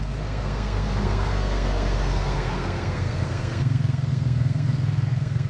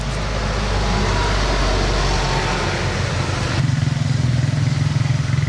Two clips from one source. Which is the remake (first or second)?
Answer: first